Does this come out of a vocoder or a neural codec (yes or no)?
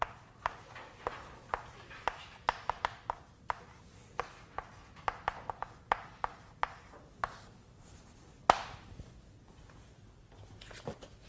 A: no